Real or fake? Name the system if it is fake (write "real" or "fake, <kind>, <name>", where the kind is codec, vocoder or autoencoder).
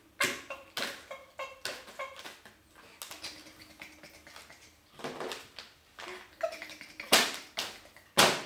real